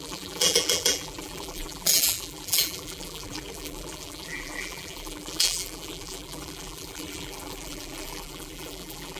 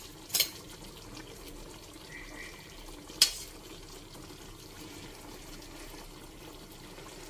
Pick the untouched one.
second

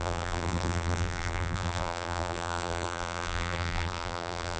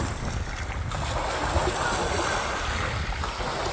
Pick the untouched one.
second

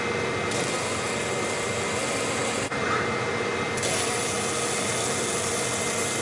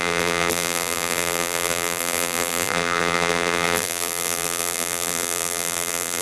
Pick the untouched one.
first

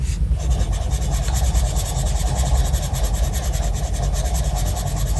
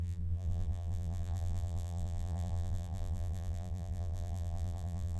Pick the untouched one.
first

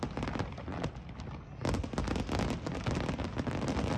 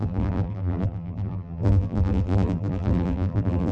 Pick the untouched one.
first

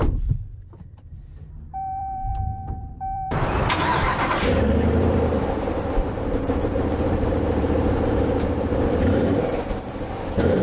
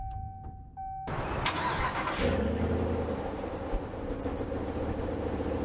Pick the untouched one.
second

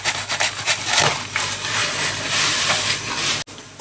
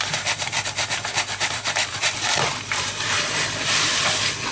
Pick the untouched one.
first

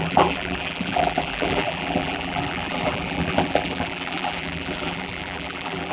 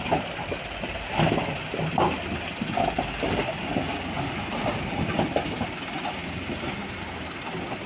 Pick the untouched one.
second